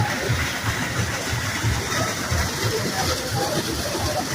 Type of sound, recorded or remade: remade